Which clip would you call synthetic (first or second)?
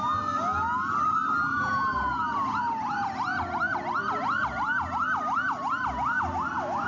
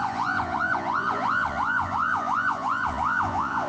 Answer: second